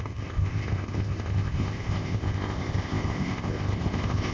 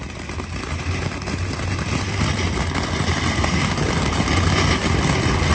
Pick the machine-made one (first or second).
first